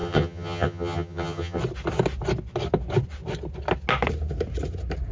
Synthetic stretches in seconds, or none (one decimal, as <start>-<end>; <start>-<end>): 0.0-1.6